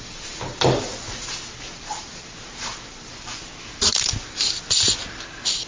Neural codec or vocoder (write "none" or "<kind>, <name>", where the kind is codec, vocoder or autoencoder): none